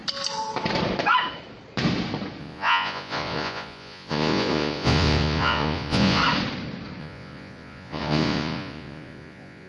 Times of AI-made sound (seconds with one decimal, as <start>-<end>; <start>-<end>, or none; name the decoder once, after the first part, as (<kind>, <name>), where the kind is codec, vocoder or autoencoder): 2.4-6.2 (vocoder, Vocos); 7.0-9.7